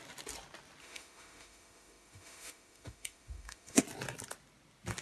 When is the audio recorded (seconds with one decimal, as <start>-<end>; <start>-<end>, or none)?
0.0-0.8; 3.8-5.0